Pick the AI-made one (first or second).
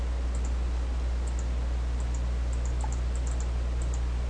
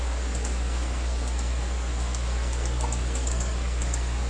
second